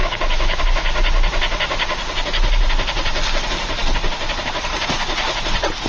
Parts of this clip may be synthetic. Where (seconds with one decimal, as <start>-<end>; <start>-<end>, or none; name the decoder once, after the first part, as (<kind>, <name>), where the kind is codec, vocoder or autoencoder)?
0.0-0.6 (autoencoder, DAC-VAE)